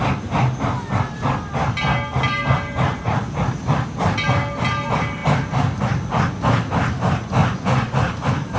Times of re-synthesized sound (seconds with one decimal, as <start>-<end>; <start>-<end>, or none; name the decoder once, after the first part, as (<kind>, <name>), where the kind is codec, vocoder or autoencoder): 7.4-8.1 (vocoder, Vocos)